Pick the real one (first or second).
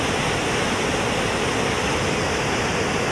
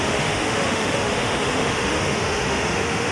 first